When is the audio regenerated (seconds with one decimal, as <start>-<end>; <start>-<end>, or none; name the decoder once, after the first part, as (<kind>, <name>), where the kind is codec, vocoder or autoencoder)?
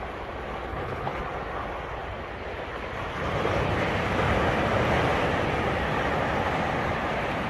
0.7-1.2 (codec, HILCodec)